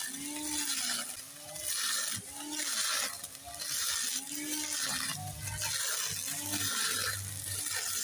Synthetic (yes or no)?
no